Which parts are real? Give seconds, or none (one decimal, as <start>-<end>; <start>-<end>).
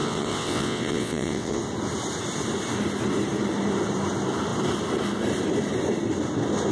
1.6-6.7